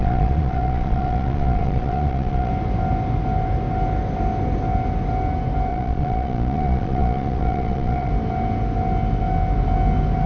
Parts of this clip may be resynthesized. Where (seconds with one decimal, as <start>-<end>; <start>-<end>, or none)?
0.0-2.5; 5.7-8.1